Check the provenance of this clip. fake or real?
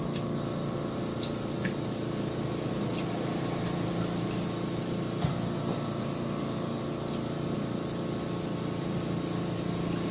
real